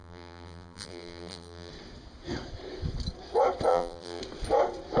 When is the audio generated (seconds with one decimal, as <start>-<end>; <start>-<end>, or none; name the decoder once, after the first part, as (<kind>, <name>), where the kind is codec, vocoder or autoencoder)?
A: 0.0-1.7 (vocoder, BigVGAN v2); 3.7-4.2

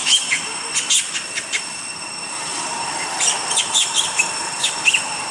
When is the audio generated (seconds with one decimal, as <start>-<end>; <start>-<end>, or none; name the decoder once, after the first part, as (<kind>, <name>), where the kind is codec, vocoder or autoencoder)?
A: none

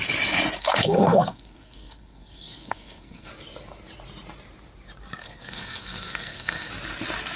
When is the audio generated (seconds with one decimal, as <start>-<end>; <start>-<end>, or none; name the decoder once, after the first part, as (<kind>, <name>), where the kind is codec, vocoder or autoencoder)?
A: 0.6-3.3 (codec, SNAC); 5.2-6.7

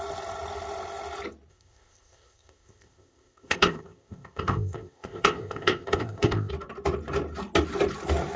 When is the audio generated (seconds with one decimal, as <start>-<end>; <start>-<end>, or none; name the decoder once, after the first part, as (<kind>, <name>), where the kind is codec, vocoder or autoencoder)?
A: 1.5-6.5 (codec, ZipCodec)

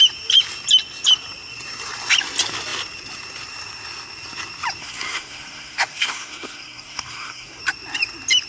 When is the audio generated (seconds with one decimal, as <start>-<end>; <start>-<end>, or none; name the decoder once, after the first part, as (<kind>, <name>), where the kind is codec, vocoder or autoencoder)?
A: 4.8-7.6 (codec, SNAC)